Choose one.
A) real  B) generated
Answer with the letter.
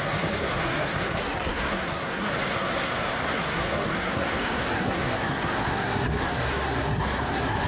B